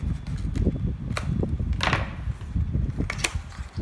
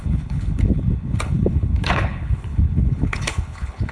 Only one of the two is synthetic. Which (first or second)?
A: second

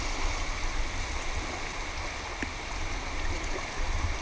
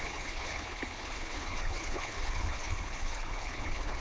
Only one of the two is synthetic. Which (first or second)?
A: second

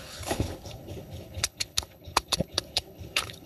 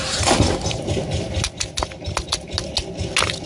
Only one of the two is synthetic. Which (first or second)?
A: first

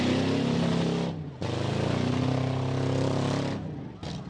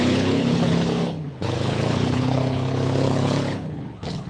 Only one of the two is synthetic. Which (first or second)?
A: second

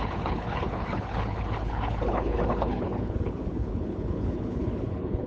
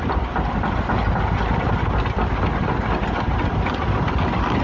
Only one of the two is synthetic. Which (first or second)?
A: first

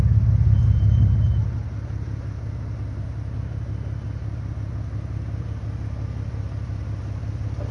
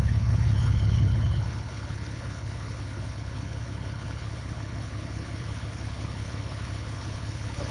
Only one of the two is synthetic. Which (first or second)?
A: second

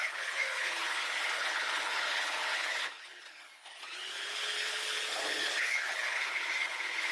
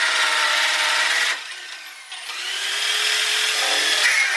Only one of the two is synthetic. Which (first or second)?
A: first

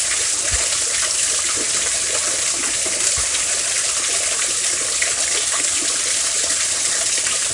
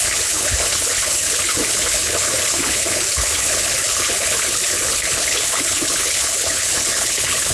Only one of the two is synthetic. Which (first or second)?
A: second